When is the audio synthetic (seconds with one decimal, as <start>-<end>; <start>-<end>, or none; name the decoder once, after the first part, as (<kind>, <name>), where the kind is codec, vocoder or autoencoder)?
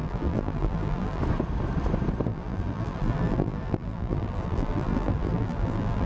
0.0-1.2 (vocoder, BigVGAN v2); 2.3-6.1